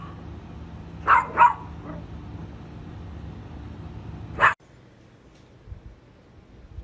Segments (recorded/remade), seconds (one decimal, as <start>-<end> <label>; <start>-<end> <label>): 0.0-6.8 recorded